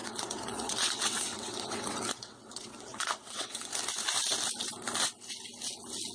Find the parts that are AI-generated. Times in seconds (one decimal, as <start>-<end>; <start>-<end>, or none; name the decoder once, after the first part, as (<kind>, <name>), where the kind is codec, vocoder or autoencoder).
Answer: 0.0-3.7 (vocoder, WaveNeXt)